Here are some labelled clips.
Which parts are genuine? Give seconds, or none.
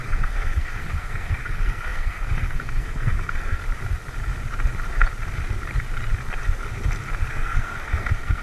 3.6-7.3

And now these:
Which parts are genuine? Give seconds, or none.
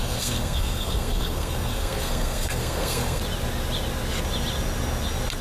3.2-5.4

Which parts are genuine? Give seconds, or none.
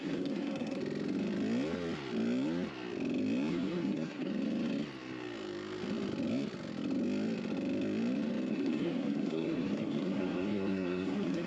0.8-3.5; 4.3-8.5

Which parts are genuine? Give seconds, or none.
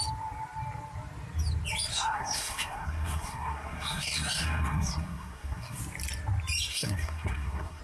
0.0-1.9; 5.8-6.7